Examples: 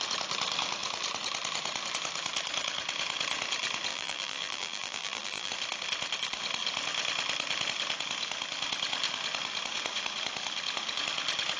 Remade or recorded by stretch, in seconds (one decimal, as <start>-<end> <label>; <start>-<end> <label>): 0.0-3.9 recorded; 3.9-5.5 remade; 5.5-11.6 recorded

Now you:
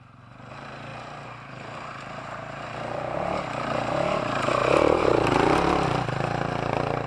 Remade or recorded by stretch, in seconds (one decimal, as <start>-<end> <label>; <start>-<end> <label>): 0.0-0.9 remade; 0.9-1.5 recorded; 1.5-7.1 remade

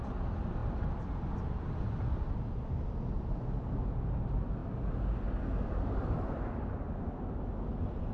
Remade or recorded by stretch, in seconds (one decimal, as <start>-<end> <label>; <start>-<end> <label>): 0.0-8.1 recorded

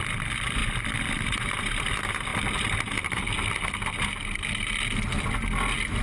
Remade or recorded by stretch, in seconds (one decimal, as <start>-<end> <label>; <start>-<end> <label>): 0.0-2.3 remade; 2.3-5.2 recorded; 5.2-6.0 remade

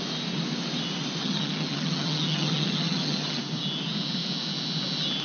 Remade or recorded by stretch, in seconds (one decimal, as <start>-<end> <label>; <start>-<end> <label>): 0.0-1.2 recorded; 1.2-3.4 remade; 3.4-5.2 recorded

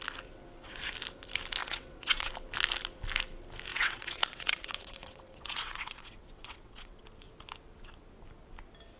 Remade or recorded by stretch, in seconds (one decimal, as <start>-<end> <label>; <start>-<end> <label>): 0.0-1.6 recorded; 1.6-2.3 remade; 2.3-3.7 recorded; 3.7-7.0 remade; 7.0-9.0 recorded

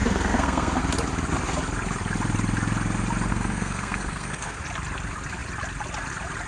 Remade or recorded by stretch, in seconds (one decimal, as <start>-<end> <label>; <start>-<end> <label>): 0.0-0.8 remade; 0.8-3.3 recorded; 3.3-4.6 remade; 4.6-6.5 recorded

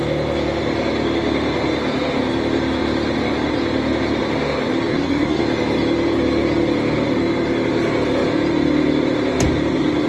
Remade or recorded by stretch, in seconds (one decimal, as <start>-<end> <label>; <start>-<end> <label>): 0.0-4.9 recorded; 4.9-5.4 remade; 5.4-10.1 recorded